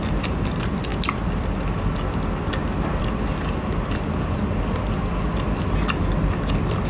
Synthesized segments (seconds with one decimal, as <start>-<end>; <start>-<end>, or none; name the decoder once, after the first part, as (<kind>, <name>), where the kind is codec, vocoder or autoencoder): none